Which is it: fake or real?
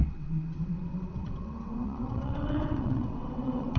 fake